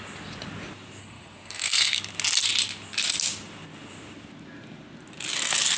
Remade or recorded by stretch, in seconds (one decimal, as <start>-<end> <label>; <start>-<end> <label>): 0.0-1.0 recorded; 1.0-2.0 remade; 2.0-5.8 recorded